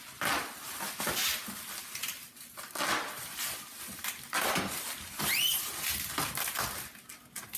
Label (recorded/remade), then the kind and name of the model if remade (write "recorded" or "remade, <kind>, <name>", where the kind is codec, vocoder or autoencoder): recorded